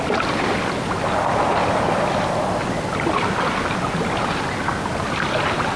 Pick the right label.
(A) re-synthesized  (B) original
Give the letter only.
B